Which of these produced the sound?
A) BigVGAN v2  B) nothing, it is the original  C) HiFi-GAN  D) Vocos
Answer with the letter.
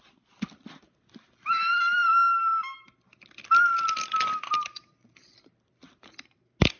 B